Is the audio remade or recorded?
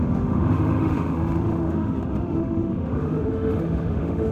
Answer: remade